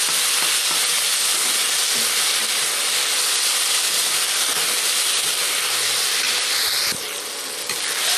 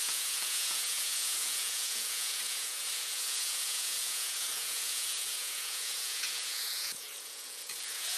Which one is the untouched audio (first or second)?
first